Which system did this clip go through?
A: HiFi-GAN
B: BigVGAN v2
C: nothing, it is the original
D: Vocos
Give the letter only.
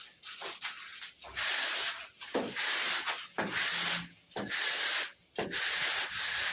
C